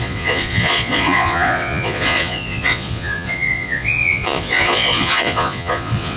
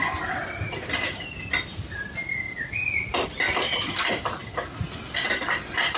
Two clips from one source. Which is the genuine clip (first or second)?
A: second